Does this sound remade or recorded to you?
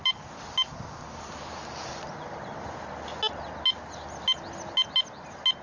recorded